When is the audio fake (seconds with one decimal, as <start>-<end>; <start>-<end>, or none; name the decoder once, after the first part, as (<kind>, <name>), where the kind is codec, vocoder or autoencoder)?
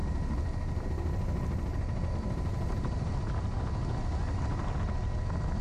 2.5-3.1 (vocoder, BigVGAN v2)